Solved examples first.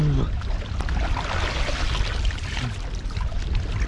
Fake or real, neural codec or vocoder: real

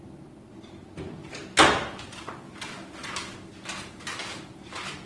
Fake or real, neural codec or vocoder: real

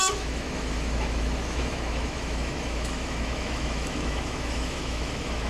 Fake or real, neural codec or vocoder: fake, autoencoder, DAC-VAE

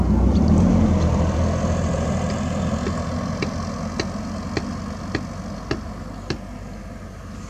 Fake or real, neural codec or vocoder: real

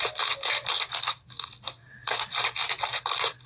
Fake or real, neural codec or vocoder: real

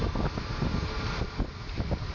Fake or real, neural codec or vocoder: real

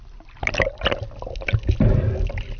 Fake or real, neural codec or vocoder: real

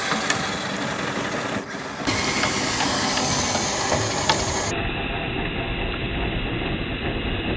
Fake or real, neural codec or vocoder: real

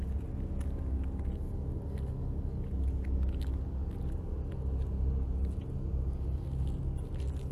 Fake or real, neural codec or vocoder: real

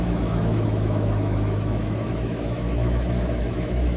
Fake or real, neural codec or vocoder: fake, autoencoder, DAC-VAE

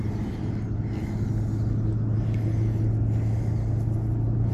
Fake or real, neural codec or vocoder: real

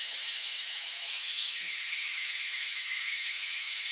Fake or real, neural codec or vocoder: fake, autoencoder, DAC-VAE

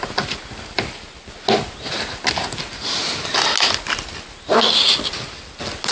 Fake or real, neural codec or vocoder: real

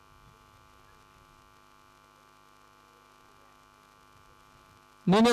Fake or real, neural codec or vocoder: real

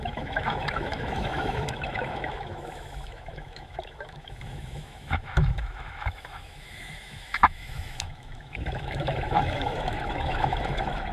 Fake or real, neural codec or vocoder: fake, autoencoder, DAC-VAE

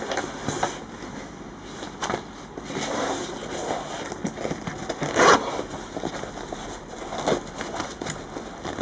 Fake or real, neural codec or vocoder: real